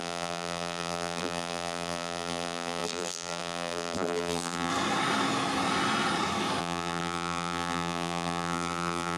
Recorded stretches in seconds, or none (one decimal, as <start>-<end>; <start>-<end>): 4.7-6.6